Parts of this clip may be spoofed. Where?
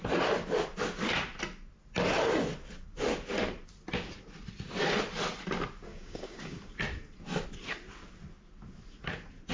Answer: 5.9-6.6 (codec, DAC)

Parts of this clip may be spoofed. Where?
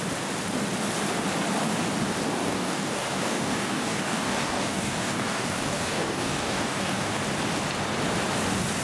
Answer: 2.4-7.2 (codec, DAC)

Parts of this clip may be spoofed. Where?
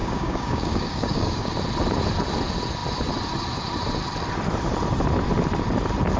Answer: 0.0-1.5 (codec, DAC)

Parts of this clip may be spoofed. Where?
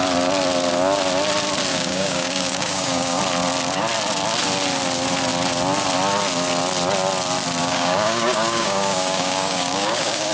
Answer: 1.7-3.2 (codec, DAC); 7.6-10.3